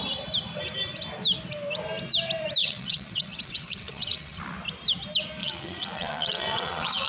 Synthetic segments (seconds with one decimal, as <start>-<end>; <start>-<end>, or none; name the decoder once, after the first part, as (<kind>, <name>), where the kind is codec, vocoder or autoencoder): 2.6-4.4 (vocoder, WaveNeXt); 5.4-7.1